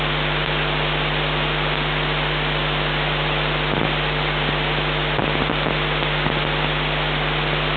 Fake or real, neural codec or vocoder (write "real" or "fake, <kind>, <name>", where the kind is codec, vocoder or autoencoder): real